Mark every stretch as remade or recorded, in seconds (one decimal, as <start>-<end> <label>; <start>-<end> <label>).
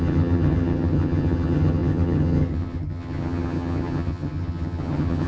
0.0-5.3 remade